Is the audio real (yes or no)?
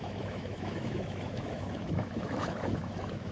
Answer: no